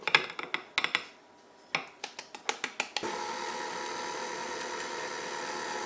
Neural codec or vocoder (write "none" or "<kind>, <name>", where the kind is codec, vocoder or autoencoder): none